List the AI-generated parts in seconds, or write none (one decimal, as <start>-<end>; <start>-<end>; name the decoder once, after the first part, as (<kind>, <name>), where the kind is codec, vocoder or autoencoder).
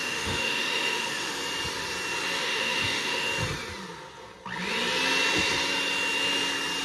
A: 0.0-1.3 (autoencoder, DAC-VAE); 2.4-3.3